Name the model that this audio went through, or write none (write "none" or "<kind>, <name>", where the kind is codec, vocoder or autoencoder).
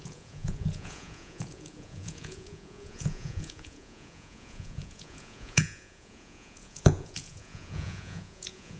vocoder, Vocos